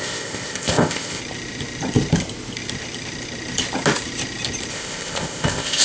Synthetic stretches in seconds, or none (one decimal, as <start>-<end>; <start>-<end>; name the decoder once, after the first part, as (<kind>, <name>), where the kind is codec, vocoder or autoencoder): 0.0-1.2 (codec, ZipCodec); 4.7-5.8